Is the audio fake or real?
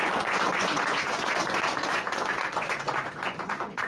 fake